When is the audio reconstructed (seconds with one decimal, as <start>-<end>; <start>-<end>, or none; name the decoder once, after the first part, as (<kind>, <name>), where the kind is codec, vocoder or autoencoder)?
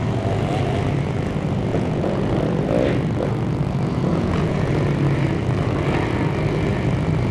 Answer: 1.7-2.3 (vocoder, Vocos); 4.1-4.7